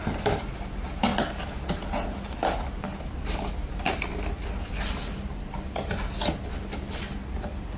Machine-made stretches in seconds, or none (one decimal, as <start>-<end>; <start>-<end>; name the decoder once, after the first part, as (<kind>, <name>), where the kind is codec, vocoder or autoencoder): 2.9-6.0 (vocoder, BigVGAN v2)